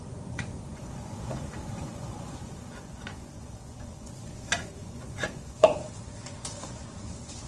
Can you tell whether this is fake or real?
fake